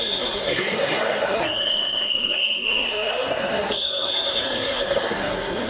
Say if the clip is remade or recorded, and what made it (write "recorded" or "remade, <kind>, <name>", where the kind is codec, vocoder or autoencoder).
remade, codec, SNAC